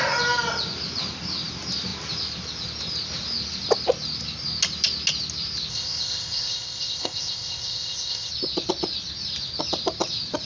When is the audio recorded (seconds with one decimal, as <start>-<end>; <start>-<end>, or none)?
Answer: 0.0-5.7; 8.3-10.4